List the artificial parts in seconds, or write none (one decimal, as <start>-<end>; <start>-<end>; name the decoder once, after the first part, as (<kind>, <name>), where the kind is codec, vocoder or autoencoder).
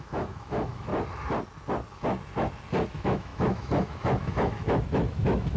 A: 0.0-0.9 (autoencoder, DAC-VAE); 2.9-5.6